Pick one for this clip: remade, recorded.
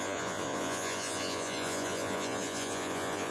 remade